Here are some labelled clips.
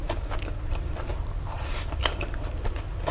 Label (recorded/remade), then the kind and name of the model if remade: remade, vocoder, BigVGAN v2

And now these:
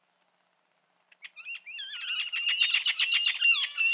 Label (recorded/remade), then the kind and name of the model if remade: recorded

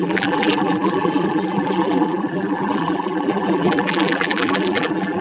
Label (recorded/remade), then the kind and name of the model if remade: remade, vocoder, BigVGAN v2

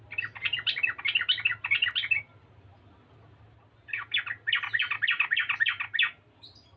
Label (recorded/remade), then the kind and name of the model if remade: recorded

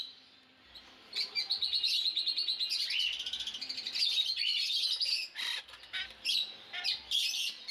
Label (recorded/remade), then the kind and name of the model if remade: recorded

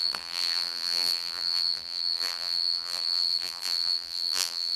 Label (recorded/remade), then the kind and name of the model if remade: remade, vocoder, BigVGAN v2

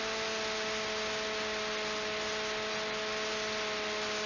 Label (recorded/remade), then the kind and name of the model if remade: recorded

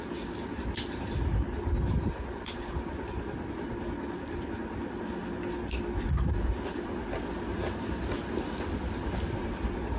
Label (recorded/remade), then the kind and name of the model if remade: recorded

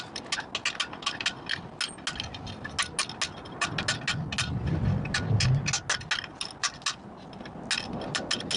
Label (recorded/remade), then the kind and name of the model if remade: recorded